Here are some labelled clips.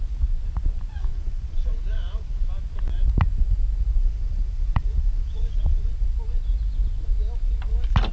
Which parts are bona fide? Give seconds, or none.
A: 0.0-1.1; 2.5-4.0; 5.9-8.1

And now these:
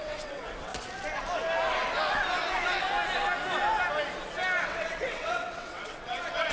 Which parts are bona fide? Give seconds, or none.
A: 0.7-4.6

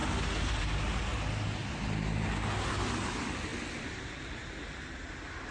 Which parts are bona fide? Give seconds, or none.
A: 0.0-5.5

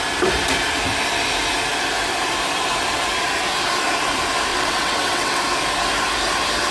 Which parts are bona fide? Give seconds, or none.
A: 0.0-4.5; 5.4-6.7

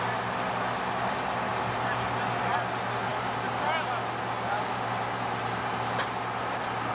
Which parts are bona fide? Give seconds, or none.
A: 0.0-6.9